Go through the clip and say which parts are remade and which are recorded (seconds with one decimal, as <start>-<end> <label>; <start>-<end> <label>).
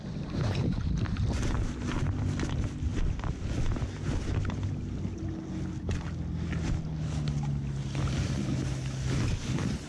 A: 0.0-9.9 recorded